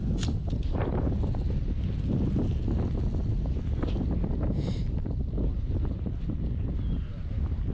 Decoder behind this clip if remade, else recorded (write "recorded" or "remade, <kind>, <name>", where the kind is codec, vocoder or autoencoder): recorded